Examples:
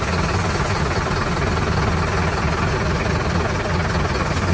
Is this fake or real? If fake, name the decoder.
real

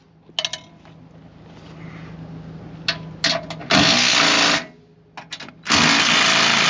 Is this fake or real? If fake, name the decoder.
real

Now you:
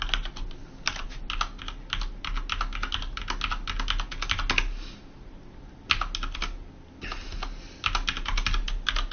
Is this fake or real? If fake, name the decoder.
real